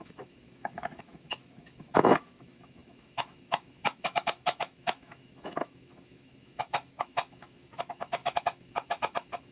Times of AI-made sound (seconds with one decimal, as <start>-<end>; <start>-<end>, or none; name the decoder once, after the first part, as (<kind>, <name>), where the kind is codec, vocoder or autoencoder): 0.0-9.5 (autoencoder, DAC-VAE)